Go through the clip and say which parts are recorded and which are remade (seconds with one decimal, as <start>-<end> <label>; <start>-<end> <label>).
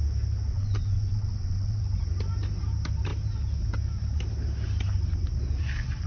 0.0-0.5 recorded; 0.5-1.8 remade; 1.8-6.1 recorded